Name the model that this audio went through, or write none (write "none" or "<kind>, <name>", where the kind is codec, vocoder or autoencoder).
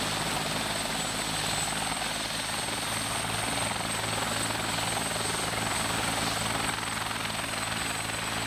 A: none